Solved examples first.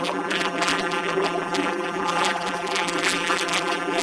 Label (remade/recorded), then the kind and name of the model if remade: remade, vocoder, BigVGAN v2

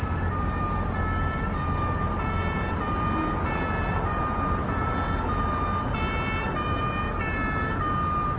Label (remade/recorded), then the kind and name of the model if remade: recorded